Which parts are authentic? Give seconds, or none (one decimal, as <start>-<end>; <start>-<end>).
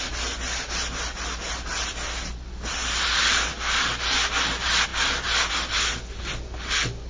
0.0-7.1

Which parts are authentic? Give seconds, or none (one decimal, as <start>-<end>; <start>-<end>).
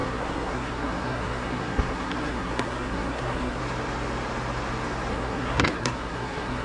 3.6-5.1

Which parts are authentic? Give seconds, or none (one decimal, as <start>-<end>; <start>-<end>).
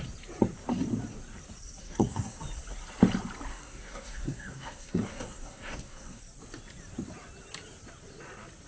0.0-1.8; 2.4-3.5; 6.2-8.7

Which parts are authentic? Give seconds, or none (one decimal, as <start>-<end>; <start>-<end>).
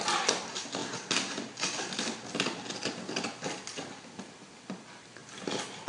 0.0-5.9